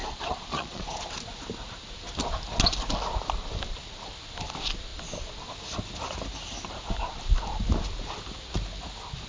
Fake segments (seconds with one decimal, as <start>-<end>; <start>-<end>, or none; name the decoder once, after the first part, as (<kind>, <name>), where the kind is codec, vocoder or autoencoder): 0.0-1.1 (vocoder, Vocos)